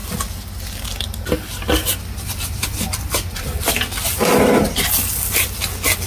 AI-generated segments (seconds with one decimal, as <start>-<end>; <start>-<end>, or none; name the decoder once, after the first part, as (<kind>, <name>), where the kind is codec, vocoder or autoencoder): none